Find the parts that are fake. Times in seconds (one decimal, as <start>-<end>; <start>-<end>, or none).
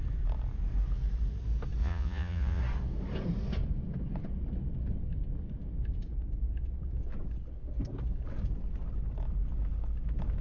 1.8-2.6